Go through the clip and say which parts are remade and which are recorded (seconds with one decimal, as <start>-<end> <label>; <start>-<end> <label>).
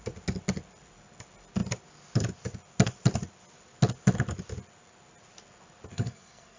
0.0-5.9 recorded; 5.9-6.6 remade